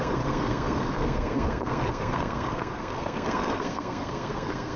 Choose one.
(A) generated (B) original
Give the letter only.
A